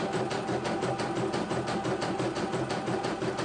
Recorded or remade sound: recorded